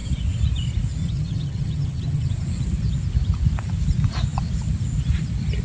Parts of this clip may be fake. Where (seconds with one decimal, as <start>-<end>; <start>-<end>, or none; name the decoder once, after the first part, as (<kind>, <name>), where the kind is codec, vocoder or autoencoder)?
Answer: 1.0-2.3 (vocoder, HiFi-GAN)